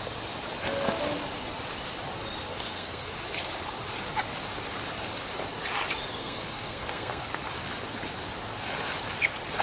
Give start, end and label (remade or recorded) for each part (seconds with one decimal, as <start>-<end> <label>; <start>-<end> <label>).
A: 0.0-2.5 recorded; 2.5-3.1 remade; 3.1-6.2 recorded; 6.2-7.3 remade; 7.3-9.6 recorded